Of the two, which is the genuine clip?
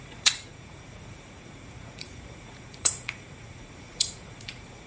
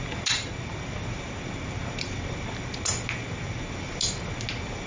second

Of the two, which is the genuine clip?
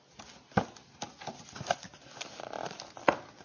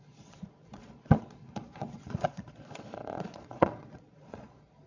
first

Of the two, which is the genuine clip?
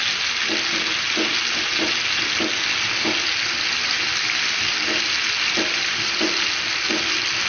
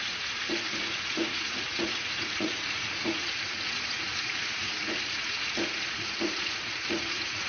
first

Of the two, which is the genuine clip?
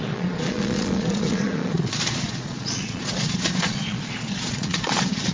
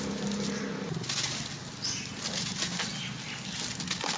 second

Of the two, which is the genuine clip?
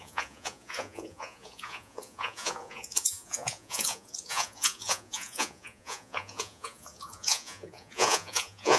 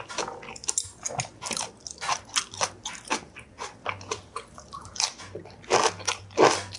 second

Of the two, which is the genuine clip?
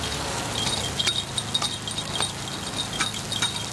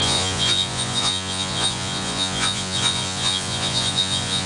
first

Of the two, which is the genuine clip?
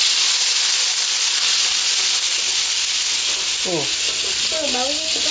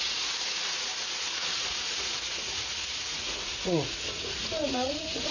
first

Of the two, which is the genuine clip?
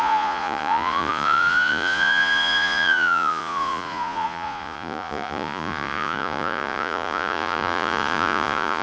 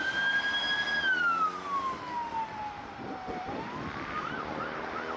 second